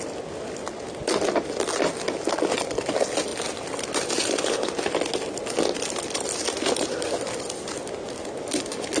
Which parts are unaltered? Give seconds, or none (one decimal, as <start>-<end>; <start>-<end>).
0.0-9.0